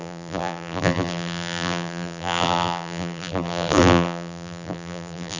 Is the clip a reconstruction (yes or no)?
yes